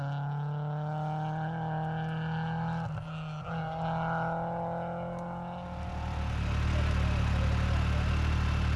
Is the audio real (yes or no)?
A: yes